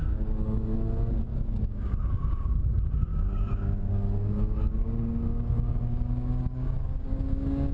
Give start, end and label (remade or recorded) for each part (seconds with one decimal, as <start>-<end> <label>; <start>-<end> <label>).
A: 0.0-0.7 remade; 0.7-1.3 recorded; 1.3-2.6 remade; 2.6-3.1 recorded; 3.1-7.7 remade